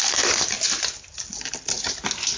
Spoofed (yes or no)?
no